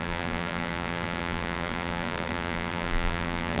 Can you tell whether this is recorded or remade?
remade